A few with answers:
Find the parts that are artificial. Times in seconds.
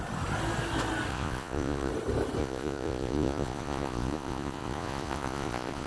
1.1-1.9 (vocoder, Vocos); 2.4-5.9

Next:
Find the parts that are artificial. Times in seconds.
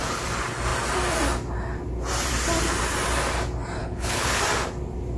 3.8-4.4 (codec, HILCodec)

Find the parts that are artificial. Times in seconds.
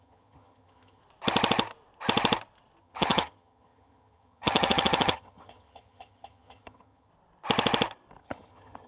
0.0-1.0 (vocoder, HiFi-GAN); 2.8-7.1; 8.2-8.9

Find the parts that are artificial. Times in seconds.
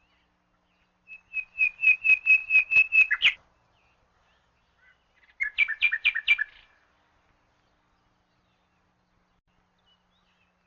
none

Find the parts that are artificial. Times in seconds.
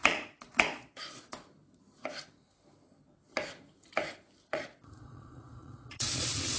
0.0-1.3 (vocoder, Vocos); 4.5-6.6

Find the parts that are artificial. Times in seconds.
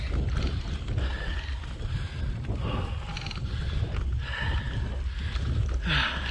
3.1-4.0 (vocoder, BigVGAN v2)